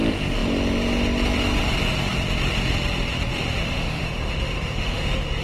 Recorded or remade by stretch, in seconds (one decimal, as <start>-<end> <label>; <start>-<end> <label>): 0.0-3.6 recorded; 3.6-5.4 remade